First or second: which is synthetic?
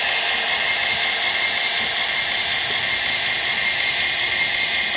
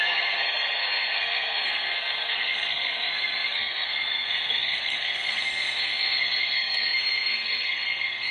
second